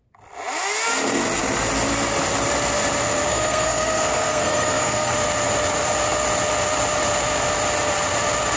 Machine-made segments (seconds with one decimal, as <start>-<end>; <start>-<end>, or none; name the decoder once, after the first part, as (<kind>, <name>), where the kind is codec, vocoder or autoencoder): 3.3-5.1 (codec, SNAC)